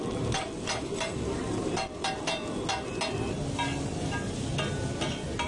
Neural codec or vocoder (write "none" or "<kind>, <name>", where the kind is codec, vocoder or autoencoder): none